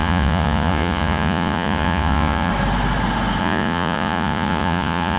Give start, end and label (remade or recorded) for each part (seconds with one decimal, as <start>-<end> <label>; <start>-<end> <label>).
0.0-2.5 remade; 2.5-3.4 recorded; 3.4-5.2 remade